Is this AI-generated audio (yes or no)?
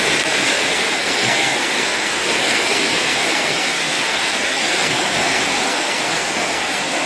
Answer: yes